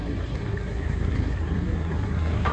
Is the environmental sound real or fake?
fake